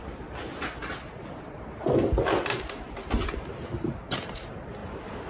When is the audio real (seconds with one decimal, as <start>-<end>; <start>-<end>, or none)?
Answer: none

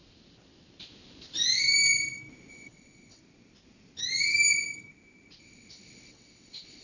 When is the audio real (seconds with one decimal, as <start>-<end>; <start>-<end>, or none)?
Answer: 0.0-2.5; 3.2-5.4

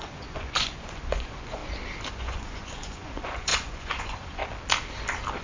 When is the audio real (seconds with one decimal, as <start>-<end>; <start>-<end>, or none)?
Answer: 1.6-2.1; 4.4-5.4

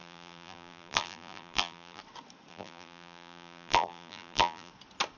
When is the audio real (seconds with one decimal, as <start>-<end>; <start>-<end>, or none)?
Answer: 2.0-2.5; 4.7-5.2

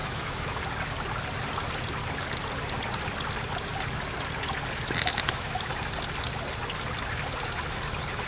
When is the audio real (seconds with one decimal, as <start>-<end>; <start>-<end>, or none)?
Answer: 0.6-5.1; 5.7-8.3